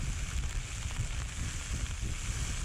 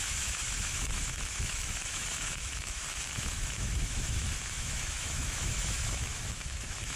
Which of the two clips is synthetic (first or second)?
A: second